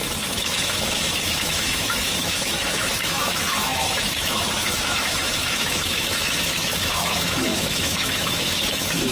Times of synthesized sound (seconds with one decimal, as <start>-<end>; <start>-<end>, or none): 0.0-9.1